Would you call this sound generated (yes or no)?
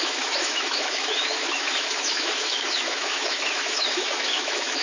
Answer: yes